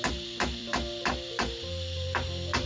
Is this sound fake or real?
fake